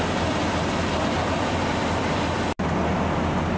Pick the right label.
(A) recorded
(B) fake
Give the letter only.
A